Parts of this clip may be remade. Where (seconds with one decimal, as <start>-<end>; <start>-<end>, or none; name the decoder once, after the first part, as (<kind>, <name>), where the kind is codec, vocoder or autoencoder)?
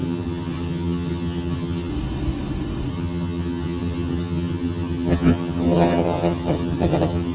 0.0-1.9 (vocoder, HiFi-GAN); 2.9-7.3